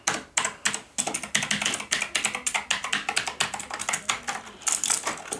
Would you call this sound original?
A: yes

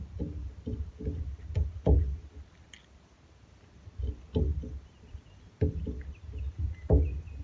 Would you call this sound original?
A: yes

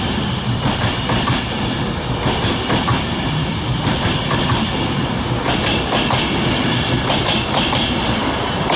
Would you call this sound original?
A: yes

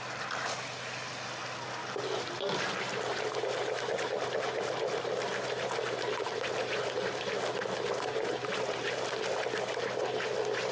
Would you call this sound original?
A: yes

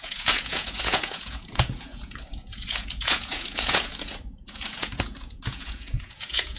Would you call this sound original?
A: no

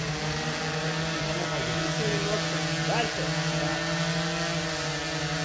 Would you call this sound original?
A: yes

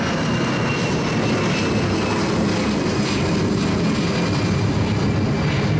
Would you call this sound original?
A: yes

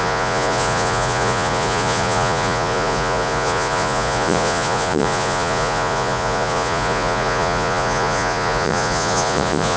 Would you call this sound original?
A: no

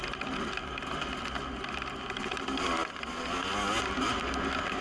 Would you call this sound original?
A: yes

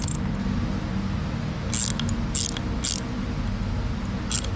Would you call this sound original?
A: yes